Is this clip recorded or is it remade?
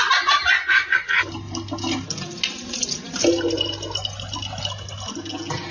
recorded